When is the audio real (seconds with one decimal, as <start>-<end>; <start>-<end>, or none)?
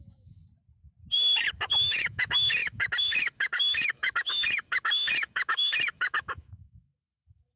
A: 0.4-1.5